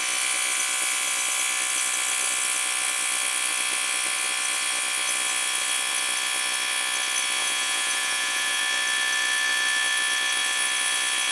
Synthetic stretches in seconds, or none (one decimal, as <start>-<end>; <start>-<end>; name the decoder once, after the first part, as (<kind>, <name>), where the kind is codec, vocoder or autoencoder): 7.4-8.6 (vocoder, Vocos)